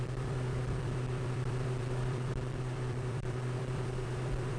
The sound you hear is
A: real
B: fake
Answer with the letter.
B